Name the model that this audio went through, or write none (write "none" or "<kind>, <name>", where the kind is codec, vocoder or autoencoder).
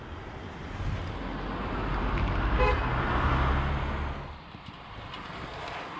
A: none